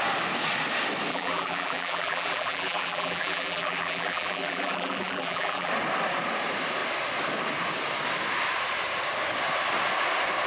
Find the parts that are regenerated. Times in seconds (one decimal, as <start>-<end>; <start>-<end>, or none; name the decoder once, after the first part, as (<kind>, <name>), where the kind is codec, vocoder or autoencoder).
1.1-5.7 (vocoder, BigVGAN v2)

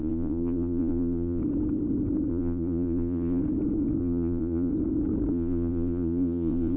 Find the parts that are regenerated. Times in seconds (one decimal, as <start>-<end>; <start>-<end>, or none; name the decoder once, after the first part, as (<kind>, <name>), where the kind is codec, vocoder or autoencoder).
0.0-1.4 (vocoder, Vocos); 2.3-3.4; 4.0-4.7; 5.3-6.8